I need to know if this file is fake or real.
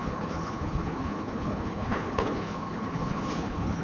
fake